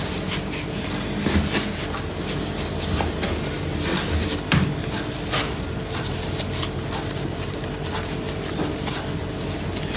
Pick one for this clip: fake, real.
real